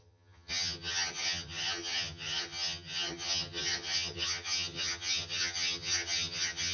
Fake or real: fake